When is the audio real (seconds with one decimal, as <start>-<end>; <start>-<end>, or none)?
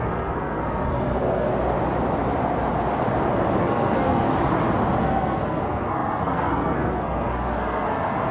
1.5-3.6; 4.3-5.0